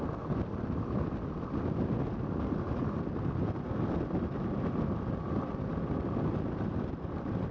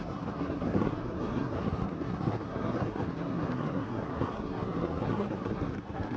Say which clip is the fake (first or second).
second